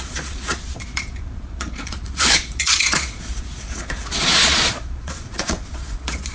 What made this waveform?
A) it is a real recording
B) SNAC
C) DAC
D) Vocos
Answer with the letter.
D